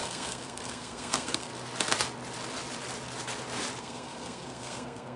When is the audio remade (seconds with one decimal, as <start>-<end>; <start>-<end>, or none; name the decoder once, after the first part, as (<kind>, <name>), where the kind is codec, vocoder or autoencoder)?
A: 0.0-1.5 (codec, SNAC); 3.8-5.2